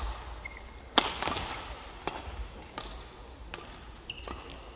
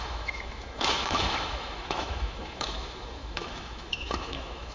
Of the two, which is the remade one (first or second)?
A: second